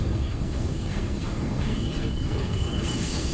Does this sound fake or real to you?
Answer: fake